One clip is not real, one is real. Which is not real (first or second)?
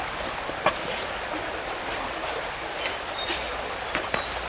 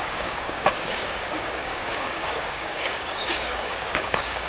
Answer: second